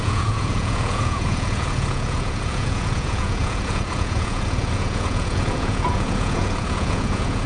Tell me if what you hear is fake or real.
fake